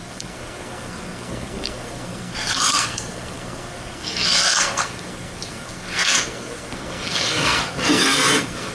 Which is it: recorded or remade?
remade